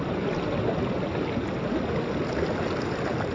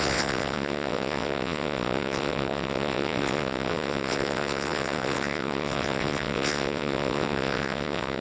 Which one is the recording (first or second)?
first